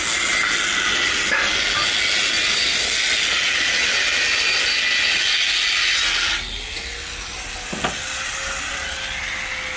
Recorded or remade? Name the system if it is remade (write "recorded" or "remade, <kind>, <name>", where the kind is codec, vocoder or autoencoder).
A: recorded